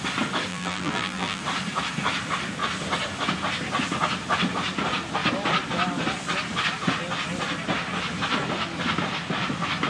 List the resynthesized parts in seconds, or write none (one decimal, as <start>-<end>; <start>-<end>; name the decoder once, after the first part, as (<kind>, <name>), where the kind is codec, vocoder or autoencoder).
0.5-1.4 (vocoder, BigVGAN v2)